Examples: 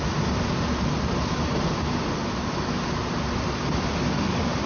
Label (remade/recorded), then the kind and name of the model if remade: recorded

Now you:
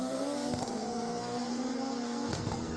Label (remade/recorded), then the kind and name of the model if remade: remade, codec, SNAC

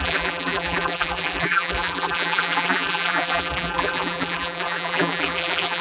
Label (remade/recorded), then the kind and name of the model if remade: remade, vocoder, BigVGAN v2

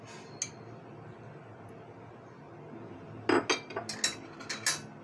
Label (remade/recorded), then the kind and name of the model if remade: recorded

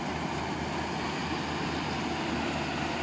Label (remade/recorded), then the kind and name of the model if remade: recorded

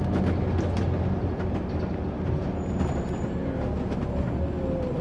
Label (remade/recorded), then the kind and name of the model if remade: recorded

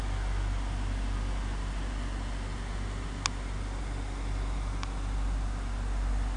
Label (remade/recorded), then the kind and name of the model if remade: recorded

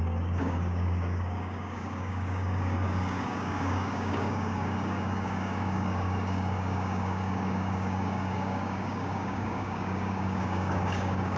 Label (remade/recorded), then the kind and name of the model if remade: remade, codec, DAC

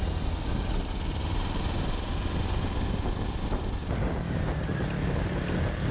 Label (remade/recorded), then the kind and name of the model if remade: recorded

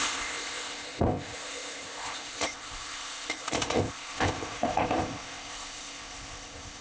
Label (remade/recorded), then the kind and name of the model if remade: remade, codec, ZipCodec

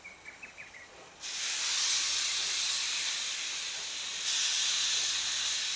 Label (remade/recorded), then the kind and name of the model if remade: recorded